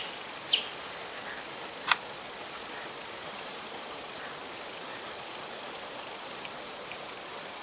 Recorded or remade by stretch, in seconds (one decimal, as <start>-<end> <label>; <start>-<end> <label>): 0.0-3.2 recorded; 3.2-4.0 remade; 4.0-4.9 recorded; 4.9-6.9 remade; 6.9-7.6 recorded